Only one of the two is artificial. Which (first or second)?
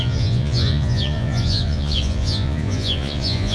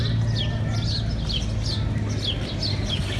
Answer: first